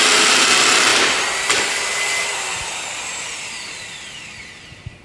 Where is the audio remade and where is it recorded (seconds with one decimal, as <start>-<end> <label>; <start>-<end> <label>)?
0.0-5.0 recorded